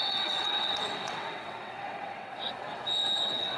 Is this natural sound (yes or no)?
no